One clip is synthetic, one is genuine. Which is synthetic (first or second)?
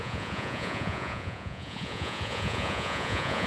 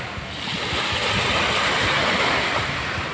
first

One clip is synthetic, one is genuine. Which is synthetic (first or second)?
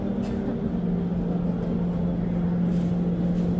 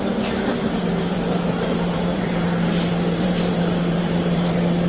second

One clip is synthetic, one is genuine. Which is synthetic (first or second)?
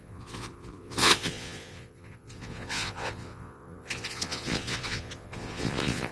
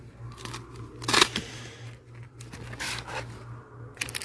first